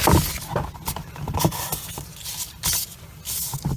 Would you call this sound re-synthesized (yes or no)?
no